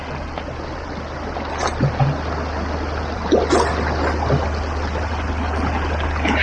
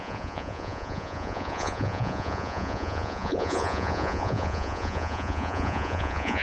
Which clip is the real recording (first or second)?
first